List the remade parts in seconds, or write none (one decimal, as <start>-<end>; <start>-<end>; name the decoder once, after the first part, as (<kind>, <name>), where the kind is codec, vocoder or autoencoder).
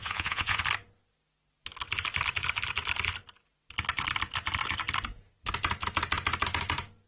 0.0-0.6 (vocoder, Vocos)